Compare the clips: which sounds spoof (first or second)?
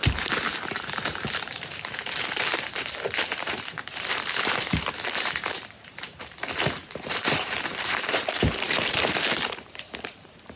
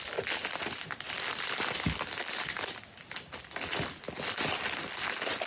first